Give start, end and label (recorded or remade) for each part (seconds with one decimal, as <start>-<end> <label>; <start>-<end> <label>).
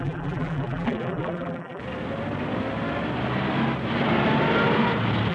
0.0-1.8 remade; 1.8-5.3 recorded